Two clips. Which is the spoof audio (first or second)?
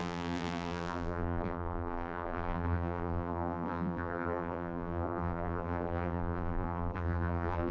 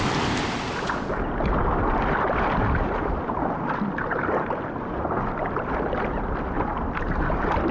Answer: first